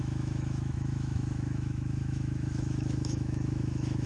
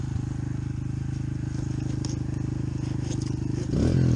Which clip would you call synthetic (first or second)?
first